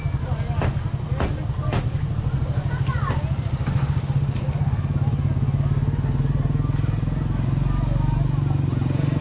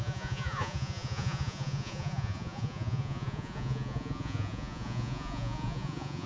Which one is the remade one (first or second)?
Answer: second